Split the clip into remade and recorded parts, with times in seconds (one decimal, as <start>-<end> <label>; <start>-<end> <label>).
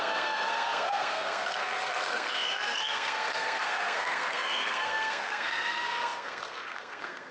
0.0-7.3 remade